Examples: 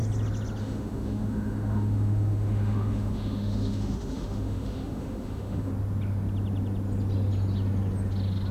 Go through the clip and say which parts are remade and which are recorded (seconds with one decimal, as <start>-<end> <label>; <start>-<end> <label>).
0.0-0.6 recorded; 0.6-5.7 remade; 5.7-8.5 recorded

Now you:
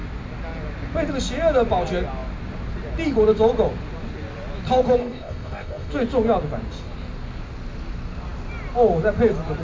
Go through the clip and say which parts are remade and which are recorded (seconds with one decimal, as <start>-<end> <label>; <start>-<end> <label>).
0.0-5.0 recorded; 5.0-5.9 remade; 5.9-9.6 recorded

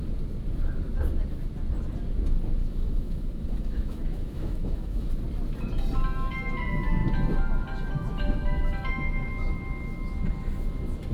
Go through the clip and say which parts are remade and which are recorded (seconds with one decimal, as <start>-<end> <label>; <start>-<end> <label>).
0.0-2.6 recorded; 2.6-5.1 remade; 5.1-11.1 recorded

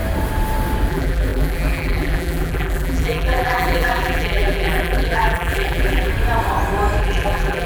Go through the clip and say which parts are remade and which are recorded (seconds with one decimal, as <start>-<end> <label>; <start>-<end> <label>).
0.0-0.9 recorded; 0.9-6.1 remade; 6.1-7.0 recorded; 7.0-7.7 remade

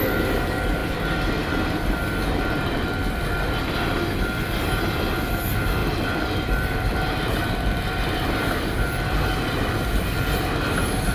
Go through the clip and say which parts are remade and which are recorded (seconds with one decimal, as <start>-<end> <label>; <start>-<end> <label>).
0.0-11.1 recorded

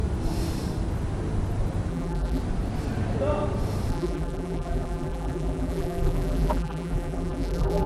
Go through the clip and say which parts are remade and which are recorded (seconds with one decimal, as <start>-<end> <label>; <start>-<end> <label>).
0.0-1.9 recorded; 1.9-2.4 remade; 2.4-3.9 recorded; 3.9-7.9 remade

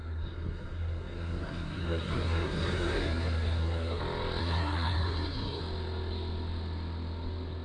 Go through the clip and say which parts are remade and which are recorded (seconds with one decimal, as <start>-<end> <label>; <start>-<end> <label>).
0.0-4.0 remade; 4.0-4.4 recorded; 4.4-5.6 remade; 5.6-7.6 recorded

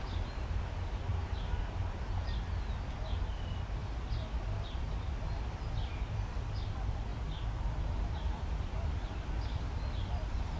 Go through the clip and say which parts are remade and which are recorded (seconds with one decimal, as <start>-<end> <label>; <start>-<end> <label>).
0.0-10.6 recorded